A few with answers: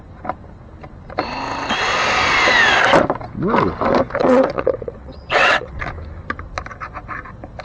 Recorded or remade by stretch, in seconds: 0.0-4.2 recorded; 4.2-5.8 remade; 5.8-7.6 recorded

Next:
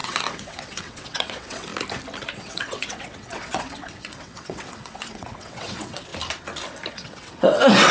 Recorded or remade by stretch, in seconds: 0.0-1.7 remade; 1.7-2.3 recorded; 2.3-6.1 remade; 6.1-6.9 recorded; 6.9-7.9 remade

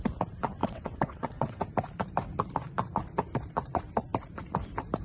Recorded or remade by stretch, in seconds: 0.0-0.6 recorded; 0.6-1.6 remade; 1.6-5.0 recorded